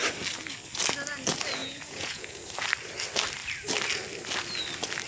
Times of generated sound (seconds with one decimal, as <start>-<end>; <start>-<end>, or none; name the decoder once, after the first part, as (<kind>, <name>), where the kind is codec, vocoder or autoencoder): 1.6-2.4 (vocoder, Vocos)